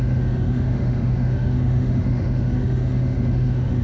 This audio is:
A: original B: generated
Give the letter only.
B